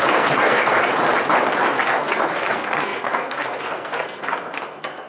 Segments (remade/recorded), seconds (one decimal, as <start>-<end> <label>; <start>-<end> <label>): 0.0-0.9 remade; 0.9-1.6 recorded; 1.6-5.1 remade